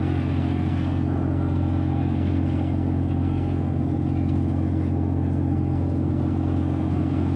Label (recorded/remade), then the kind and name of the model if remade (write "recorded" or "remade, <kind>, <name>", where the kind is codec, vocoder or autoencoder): remade, codec, SNAC